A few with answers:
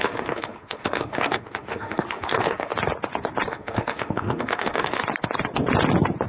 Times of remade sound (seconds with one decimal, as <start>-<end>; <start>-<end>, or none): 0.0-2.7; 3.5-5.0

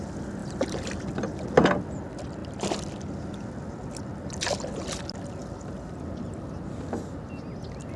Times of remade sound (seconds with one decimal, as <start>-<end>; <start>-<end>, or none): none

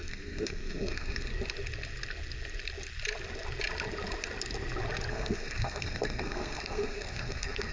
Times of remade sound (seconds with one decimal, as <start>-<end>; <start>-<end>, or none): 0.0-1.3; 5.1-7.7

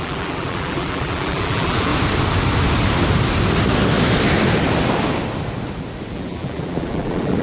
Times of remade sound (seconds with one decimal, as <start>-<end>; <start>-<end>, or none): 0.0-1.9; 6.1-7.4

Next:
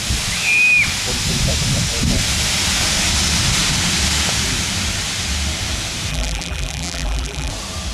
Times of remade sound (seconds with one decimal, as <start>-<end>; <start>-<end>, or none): 6.1-7.5

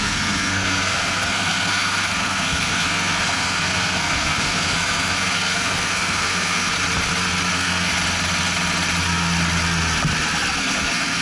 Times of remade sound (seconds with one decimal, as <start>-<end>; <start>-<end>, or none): 0.0-6.7; 7.5-7.9; 10.6-11.2

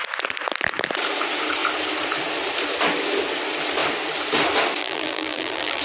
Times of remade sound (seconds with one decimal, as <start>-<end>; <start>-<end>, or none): 4.8-5.8

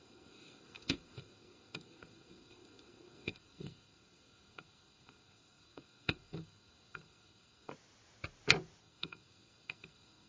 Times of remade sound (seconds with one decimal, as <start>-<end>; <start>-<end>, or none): 0.0-7.7; 8.8-10.3